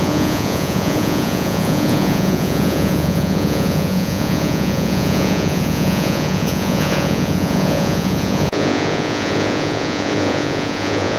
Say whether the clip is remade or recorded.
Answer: remade